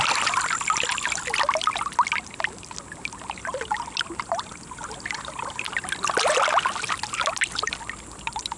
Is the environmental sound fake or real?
real